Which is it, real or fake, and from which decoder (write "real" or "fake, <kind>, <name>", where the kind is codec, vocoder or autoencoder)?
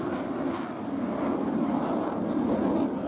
real